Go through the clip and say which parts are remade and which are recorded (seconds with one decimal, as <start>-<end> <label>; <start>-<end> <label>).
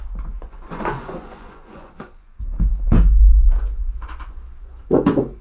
0.0-5.4 remade